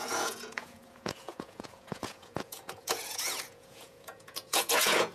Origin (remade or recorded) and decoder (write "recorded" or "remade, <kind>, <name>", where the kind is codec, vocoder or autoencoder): remade, vocoder, Vocos